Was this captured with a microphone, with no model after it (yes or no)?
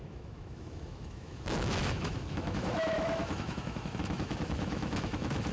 no